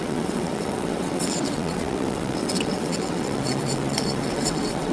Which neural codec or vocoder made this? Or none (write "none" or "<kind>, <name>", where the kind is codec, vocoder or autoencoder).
vocoder, WaveNeXt